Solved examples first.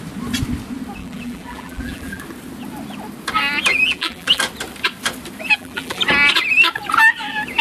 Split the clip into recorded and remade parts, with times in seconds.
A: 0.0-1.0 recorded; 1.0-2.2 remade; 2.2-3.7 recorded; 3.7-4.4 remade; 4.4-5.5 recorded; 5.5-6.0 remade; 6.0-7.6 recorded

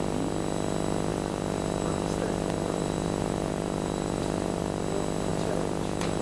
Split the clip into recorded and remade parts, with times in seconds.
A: 0.0-1.1 recorded; 1.1-4.8 remade; 4.8-5.3 recorded; 5.3-6.2 remade

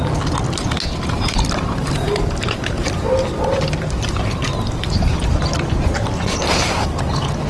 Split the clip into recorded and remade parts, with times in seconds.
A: 0.0-0.9 recorded; 0.9-5.4 remade; 5.4-6.4 recorded; 6.4-7.1 remade; 7.1-7.5 recorded

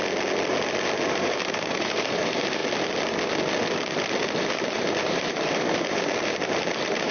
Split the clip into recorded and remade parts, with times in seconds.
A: 0.0-1.1 recorded; 1.1-2.6 remade; 2.6-4.5 recorded; 4.5-7.1 remade

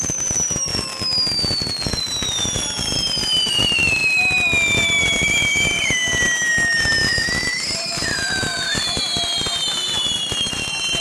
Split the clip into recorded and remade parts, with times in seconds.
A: 0.0-0.7 remade; 0.7-2.0 recorded; 2.0-4.0 remade; 4.0-5.0 recorded; 5.0-6.0 remade; 6.0-6.8 recorded; 6.8-11.0 remade